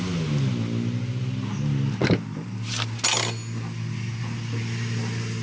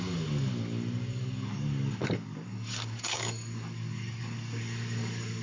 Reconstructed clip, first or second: second